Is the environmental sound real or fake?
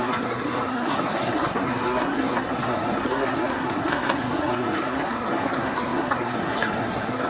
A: fake